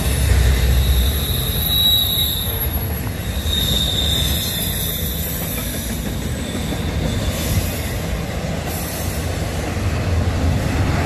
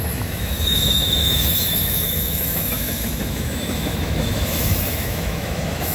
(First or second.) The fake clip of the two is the second